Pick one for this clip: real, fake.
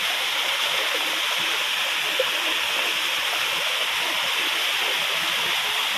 real